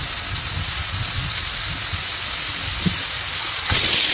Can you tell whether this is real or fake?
real